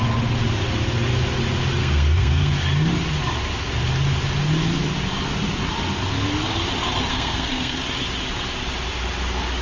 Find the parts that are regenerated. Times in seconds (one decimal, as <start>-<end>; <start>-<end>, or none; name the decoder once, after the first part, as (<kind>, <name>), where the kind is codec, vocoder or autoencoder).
1.8-2.5 (codec, SNAC); 7.1-7.8